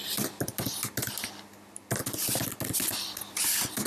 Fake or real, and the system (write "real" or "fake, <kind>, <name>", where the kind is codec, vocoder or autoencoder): real